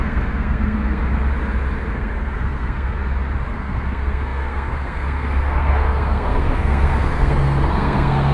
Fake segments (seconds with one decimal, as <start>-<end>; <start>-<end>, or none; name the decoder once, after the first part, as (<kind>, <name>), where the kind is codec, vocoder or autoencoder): 0.0-1.0 (codec, SNAC); 1.9-3.0; 3.5-8.3